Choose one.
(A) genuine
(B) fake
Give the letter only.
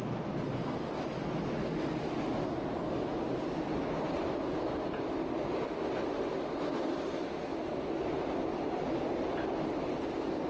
A